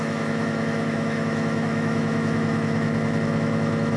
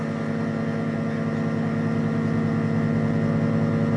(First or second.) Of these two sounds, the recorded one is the second